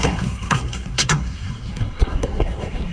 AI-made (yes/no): yes